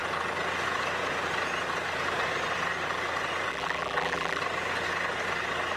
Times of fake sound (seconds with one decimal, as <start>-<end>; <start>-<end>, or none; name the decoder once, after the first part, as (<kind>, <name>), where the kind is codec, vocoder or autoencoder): 3.5-4.4 (vocoder, BigVGAN v2)